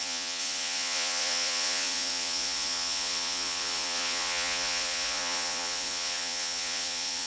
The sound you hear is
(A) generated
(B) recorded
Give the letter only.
A